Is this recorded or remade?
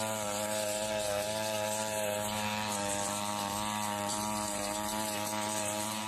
recorded